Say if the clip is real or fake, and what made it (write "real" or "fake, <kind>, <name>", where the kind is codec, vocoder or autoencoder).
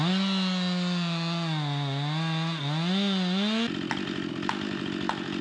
real